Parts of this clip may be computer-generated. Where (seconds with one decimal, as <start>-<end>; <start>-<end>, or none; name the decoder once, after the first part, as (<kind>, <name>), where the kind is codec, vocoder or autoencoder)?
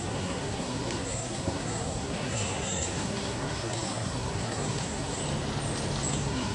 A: 0.0-5.2 (codec, SNAC); 6.1-6.5